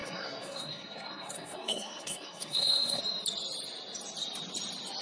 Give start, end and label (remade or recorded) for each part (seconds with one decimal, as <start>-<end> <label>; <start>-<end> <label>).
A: 0.0-3.0 remade; 3.0-5.0 recorded